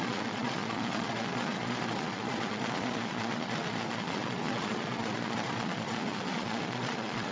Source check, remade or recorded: remade